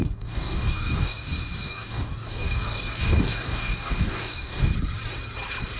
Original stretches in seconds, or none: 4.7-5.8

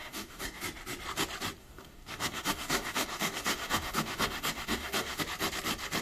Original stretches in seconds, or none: 0.6-1.6; 5.2-6.0

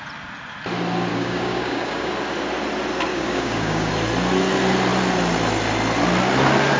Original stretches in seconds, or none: 0.0-1.1; 2.1-3.1; 3.9-6.8